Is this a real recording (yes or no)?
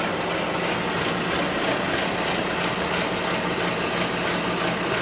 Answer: yes